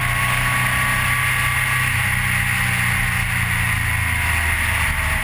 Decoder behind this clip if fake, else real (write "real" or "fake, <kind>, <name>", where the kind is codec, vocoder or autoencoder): real